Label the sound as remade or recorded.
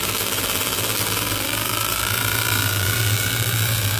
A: remade